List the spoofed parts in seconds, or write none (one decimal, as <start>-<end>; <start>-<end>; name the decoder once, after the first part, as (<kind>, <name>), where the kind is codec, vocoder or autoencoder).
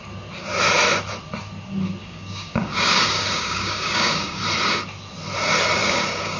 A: 2.0-4.4 (codec, DAC); 5.8-6.4